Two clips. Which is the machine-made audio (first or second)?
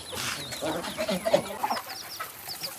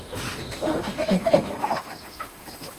second